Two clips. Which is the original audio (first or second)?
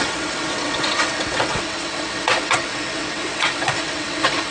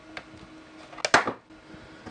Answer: second